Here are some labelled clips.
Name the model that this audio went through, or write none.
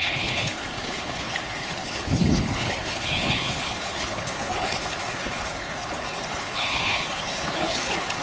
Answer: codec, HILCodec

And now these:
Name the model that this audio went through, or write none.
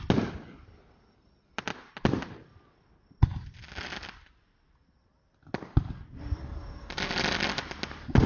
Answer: none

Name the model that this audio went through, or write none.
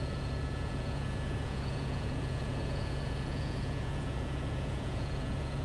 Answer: vocoder, Vocos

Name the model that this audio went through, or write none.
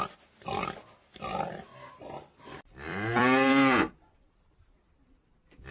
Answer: vocoder, BigVGAN v2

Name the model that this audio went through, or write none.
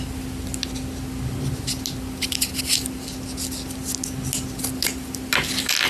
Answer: none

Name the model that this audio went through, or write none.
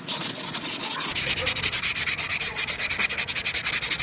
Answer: none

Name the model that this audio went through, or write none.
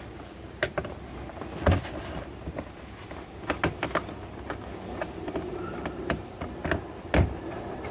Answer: none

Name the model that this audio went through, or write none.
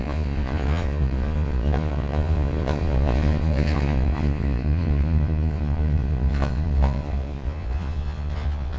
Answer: vocoder, Vocos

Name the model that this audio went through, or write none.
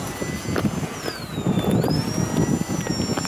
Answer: none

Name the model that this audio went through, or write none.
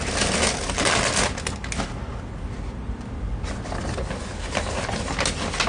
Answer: none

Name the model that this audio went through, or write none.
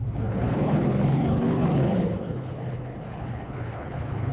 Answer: codec, HILCodec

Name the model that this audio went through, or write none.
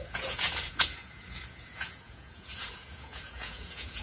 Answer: vocoder, Vocos